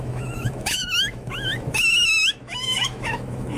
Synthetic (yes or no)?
yes